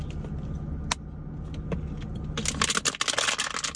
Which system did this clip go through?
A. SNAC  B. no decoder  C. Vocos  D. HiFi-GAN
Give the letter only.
B